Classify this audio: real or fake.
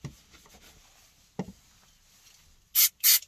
real